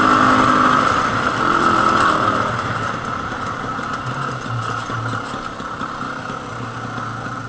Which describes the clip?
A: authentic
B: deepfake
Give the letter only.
A